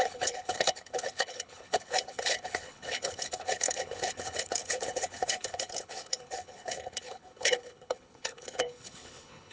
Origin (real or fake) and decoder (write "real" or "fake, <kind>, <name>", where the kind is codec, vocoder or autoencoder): fake, codec, HILCodec